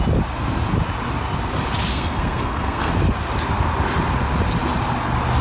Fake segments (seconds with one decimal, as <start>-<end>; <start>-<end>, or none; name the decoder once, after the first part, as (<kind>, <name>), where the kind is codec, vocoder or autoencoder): 1.9-2.9 (codec, SNAC)